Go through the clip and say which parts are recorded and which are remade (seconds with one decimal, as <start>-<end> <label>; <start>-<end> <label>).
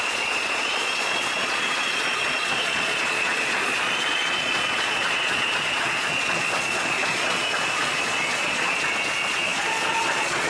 0.0-10.5 remade